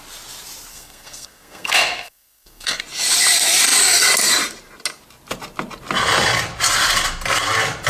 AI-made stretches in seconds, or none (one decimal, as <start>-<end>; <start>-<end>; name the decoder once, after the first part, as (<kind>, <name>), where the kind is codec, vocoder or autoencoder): 0.7-2.8 (codec, SNAC)